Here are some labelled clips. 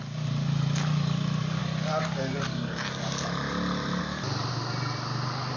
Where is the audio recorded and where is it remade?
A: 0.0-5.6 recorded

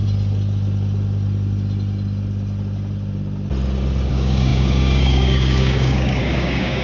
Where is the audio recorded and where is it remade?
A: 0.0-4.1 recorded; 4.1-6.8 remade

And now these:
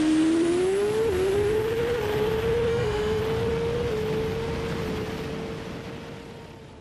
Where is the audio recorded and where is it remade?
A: 0.0-2.7 recorded; 2.7-3.2 remade; 3.2-6.8 recorded

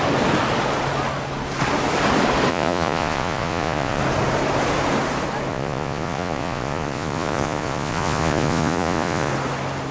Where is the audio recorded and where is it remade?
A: 0.0-2.5 recorded; 2.5-4.0 remade; 4.0-5.5 recorded; 5.5-9.3 remade; 9.3-9.9 recorded

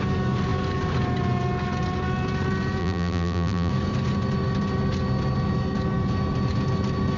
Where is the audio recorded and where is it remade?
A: 0.0-2.8 recorded; 2.8-3.7 remade; 3.7-7.2 recorded